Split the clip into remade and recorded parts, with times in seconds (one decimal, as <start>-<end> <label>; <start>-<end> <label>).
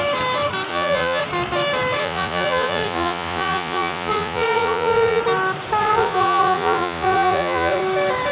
0.0-0.7 recorded; 0.7-1.2 remade; 1.2-2.0 recorded; 2.0-5.2 remade; 5.2-5.8 recorded; 5.8-7.8 remade; 7.8-8.3 recorded